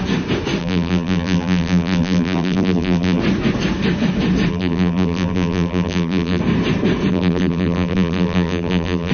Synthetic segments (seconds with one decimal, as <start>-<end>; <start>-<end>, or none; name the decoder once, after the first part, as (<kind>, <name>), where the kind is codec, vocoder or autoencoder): 0.6-3.2 (vocoder, BigVGAN v2); 4.5-6.4; 7.1-9.1